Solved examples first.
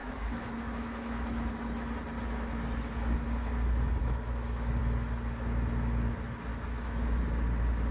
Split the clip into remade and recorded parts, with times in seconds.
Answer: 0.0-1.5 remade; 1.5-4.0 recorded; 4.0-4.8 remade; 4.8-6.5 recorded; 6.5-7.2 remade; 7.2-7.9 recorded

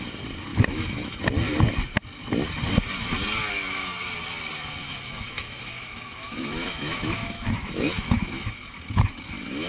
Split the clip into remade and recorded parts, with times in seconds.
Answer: 0.0-0.5 recorded; 0.5-1.3 remade; 1.3-4.8 recorded; 4.8-9.7 remade

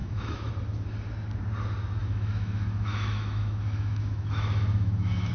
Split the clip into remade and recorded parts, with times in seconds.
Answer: 0.0-0.5 remade; 0.5-2.0 recorded; 2.0-5.3 remade

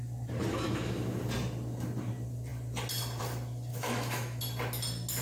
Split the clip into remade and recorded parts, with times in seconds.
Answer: 0.0-0.5 recorded; 0.5-1.2 remade; 1.2-3.7 recorded; 3.7-4.4 remade; 4.4-5.2 recorded

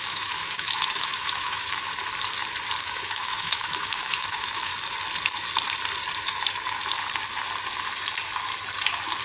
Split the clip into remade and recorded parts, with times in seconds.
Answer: 0.0-1.9 remade; 1.9-2.8 recorded; 2.8-4.7 remade; 4.7-9.2 recorded

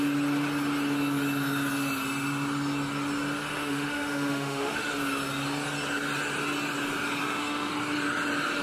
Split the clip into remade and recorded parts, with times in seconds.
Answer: 0.0-3.6 recorded; 3.6-4.9 remade; 4.9-7.2 recorded; 7.2-7.7 remade; 7.7-8.6 recorded

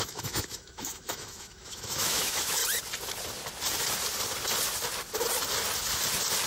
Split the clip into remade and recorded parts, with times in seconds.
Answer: 0.0-2.6 remade; 2.6-6.5 recorded

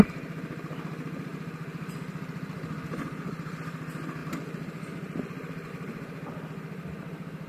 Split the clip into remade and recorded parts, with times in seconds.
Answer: 0.0-7.5 recorded